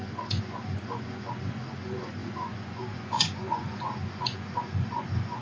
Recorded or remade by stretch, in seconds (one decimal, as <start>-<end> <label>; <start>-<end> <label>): 0.0-5.4 remade